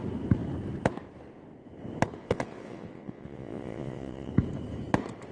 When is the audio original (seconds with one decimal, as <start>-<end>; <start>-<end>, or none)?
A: 0.0-2.2; 4.3-5.3